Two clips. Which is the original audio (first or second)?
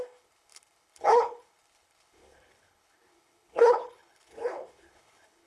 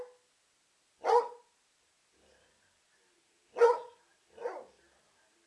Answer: second